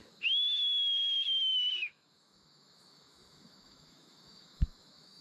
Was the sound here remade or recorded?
remade